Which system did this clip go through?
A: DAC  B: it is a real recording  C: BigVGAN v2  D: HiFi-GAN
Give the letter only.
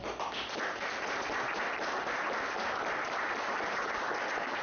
B